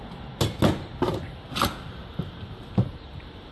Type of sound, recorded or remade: recorded